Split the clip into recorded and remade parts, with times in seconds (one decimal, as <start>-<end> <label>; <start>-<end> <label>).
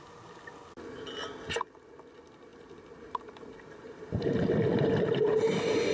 0.0-2.5 recorded; 2.5-5.5 remade; 5.5-5.9 recorded